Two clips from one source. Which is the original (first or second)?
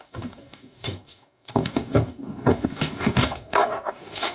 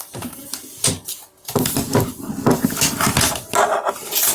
second